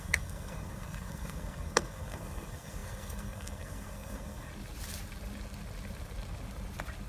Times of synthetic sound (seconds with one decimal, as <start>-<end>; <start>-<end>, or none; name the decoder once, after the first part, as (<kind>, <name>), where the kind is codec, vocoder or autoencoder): 0.0-4.5 (codec, SNAC)